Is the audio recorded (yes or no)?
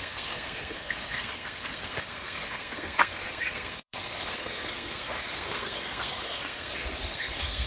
no